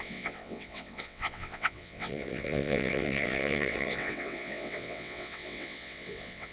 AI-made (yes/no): yes